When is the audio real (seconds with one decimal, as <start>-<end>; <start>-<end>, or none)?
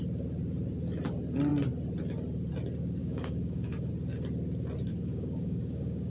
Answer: 0.0-3.0; 3.9-4.9